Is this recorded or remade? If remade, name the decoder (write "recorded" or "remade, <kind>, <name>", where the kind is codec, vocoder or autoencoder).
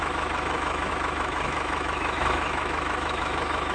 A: remade, autoencoder, DAC-VAE